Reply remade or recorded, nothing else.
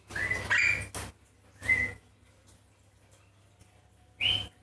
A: recorded